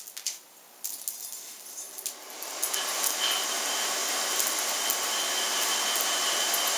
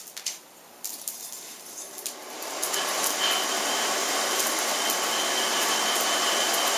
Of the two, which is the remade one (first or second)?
second